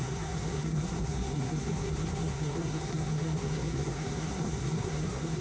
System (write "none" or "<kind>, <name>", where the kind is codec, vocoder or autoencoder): codec, SNAC